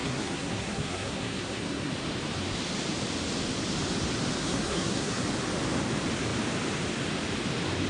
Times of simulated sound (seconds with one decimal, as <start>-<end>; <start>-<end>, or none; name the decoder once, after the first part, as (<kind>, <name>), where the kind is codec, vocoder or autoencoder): 0.0-1.9 (codec, SNAC); 4.4-5.2